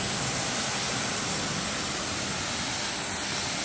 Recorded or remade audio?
recorded